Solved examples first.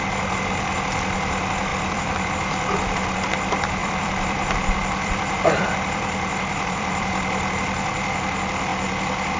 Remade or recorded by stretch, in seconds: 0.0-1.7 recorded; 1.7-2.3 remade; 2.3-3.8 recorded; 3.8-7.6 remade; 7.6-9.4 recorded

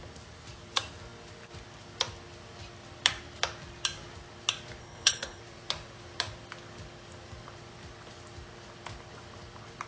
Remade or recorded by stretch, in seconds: 0.0-4.8 recorded; 4.8-5.4 remade; 5.4-9.9 recorded